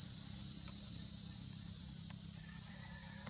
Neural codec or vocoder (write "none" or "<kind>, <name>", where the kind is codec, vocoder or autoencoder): vocoder, BigVGAN v2